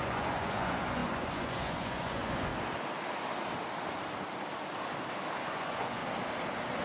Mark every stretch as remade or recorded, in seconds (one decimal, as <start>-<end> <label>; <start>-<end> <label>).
0.0-2.5 remade; 2.5-5.4 recorded; 5.4-6.0 remade; 6.0-6.8 recorded

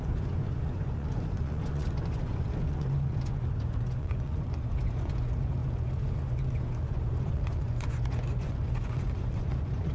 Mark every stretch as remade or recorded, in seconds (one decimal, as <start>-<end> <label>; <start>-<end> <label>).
0.0-9.9 remade

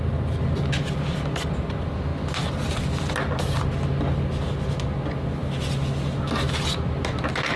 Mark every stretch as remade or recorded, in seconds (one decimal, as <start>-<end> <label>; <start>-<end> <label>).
0.0-7.6 recorded

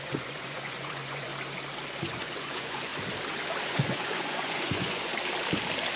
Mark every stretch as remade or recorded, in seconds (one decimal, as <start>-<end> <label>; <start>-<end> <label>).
0.0-1.3 remade; 1.3-1.9 recorded; 1.9-2.9 remade; 2.9-3.6 recorded; 3.6-5.1 remade; 5.1-6.0 recorded